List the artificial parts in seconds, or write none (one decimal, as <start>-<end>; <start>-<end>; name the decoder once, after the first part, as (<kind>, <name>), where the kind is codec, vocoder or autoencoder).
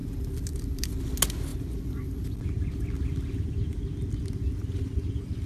none